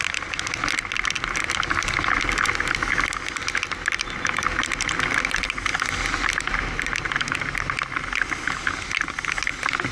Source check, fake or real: real